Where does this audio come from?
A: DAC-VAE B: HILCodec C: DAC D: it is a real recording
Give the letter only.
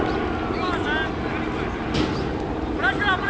D